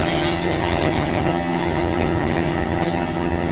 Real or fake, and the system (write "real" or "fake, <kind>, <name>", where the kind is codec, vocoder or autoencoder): fake, vocoder, HiFi-GAN